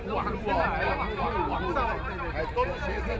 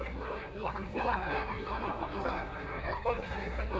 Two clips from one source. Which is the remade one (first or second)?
second